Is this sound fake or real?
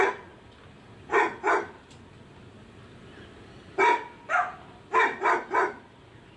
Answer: real